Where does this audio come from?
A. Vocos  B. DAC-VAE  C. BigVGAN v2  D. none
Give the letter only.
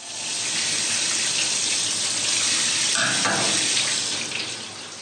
D